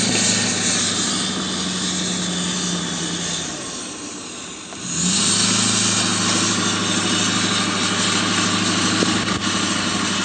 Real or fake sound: real